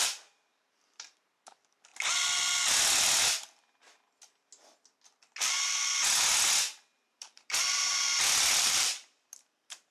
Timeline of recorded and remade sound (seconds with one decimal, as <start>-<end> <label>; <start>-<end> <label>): 0.0-1.9 remade; 1.9-7.1 recorded; 7.1-7.9 remade; 7.9-8.6 recorded; 8.6-9.9 remade